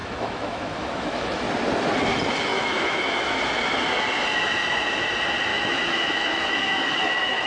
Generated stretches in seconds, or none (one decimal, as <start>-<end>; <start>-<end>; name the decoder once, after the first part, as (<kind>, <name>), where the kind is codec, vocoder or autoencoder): 0.0-1.4 (autoencoder, DAC-VAE); 2.5-3.3; 5.5-7.5